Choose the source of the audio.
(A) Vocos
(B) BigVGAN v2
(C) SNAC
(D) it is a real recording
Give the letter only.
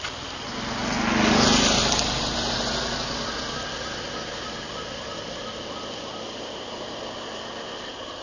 D